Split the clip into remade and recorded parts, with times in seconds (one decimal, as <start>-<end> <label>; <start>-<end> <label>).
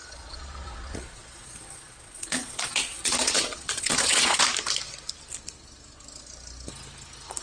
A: 0.0-4.4 remade; 4.4-7.4 recorded